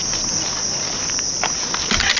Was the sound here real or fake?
real